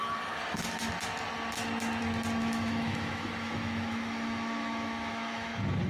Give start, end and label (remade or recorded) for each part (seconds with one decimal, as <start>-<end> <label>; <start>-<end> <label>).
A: 0.0-2.4 recorded; 2.4-5.5 remade; 5.5-5.9 recorded

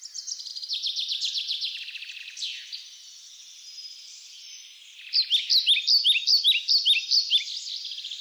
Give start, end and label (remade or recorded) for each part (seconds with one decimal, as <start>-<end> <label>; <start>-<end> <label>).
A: 0.0-8.2 recorded

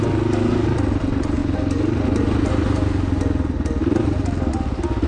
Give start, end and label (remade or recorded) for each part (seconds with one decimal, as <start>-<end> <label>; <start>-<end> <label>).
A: 0.0-5.1 recorded

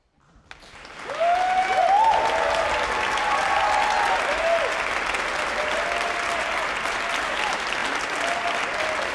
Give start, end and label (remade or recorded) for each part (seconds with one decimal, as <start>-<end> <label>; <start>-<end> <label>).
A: 0.0-9.1 recorded

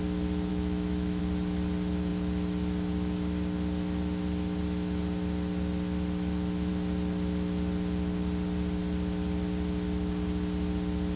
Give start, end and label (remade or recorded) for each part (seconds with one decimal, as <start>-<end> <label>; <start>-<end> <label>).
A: 0.0-0.5 recorded; 0.5-1.2 remade; 1.2-11.2 recorded